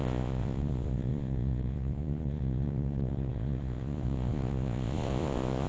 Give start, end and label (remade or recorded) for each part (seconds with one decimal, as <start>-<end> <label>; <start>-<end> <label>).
0.0-5.7 remade